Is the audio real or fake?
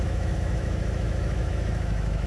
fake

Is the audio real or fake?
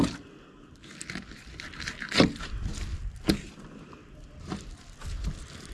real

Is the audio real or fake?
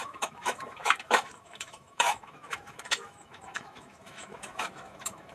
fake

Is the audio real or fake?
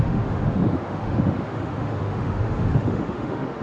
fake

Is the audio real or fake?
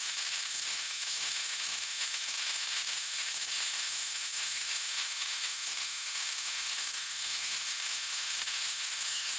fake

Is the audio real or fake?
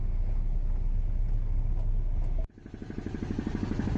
real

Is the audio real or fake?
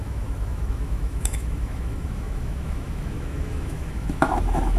fake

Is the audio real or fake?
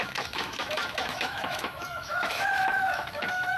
fake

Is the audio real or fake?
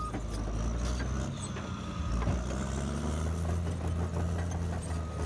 real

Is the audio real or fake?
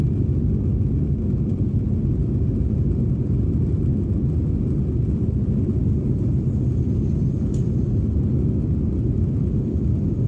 real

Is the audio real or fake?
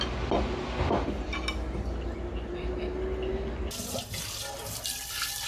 real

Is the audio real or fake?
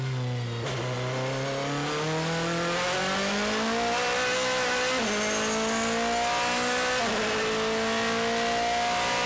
real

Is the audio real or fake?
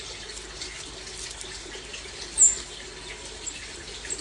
real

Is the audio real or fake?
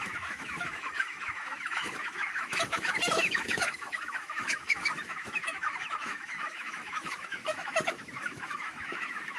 fake